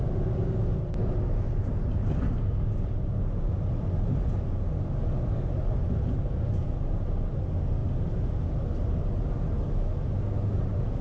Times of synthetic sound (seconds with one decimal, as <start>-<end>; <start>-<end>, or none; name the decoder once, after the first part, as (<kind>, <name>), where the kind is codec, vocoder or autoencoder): none